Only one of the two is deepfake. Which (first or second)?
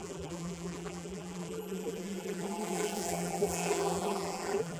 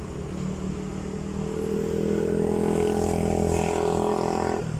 first